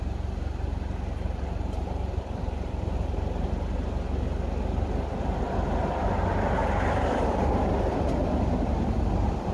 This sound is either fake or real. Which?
real